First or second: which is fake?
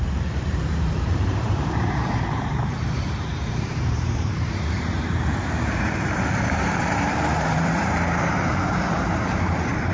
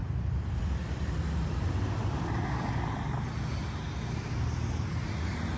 first